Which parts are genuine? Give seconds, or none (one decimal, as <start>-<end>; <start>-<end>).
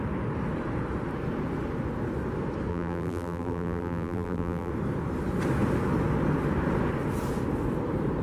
0.0-2.7; 4.7-8.2